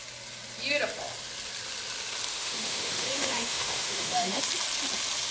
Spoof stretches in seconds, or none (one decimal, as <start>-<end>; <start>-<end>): 2.3-4.4